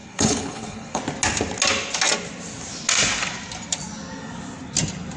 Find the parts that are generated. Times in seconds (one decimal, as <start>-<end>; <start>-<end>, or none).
0.0-1.0